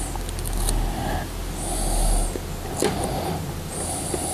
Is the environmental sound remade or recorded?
recorded